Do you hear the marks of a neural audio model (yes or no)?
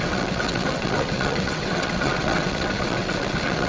yes